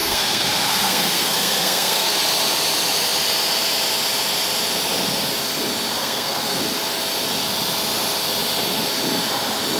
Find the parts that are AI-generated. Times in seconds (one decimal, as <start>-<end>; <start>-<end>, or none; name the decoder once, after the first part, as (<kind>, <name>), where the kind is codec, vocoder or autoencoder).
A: 0.0-2.2 (codec, SNAC); 6.0-6.6